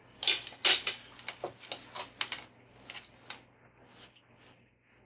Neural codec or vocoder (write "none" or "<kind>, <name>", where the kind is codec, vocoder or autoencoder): none